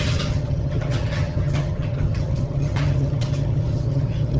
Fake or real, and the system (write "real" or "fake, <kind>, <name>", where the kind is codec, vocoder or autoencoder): fake, vocoder, HiFi-GAN